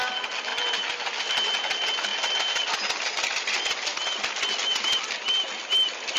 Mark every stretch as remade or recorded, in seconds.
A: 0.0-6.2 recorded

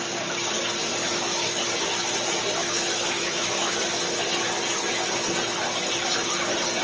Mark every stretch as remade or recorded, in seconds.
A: 0.0-1.0 recorded; 1.0-1.6 remade; 1.6-2.6 recorded; 2.6-3.7 remade; 3.7-6.8 recorded